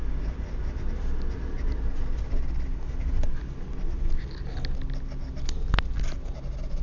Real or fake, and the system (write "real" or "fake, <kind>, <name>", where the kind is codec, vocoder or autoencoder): real